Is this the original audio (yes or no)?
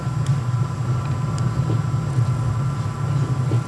yes